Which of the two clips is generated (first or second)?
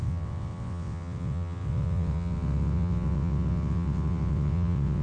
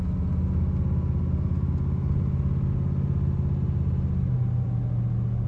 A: first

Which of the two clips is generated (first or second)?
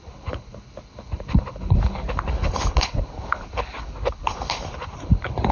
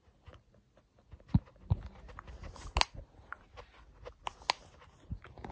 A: first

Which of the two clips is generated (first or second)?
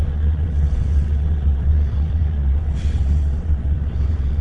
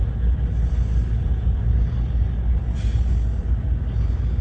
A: first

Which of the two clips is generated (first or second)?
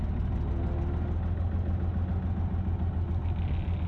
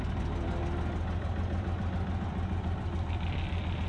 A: second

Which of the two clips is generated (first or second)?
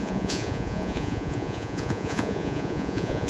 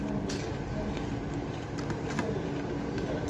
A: first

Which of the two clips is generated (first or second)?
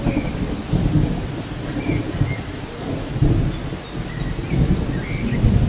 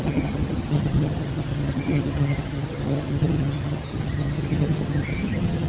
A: second